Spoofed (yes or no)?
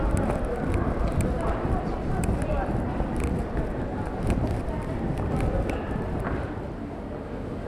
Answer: no